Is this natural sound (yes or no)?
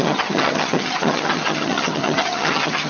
no